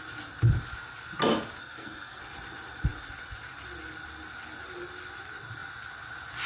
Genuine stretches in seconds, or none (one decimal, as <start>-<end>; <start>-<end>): 0.0-1.6; 2.2-6.5